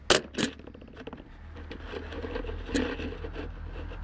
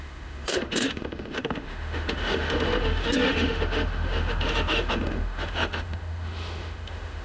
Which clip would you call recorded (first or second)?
first